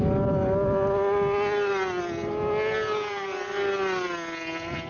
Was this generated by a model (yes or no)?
no